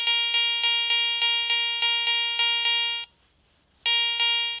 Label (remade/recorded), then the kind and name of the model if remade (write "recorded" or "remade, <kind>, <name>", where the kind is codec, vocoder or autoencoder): recorded